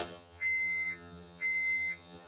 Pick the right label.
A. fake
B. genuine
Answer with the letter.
A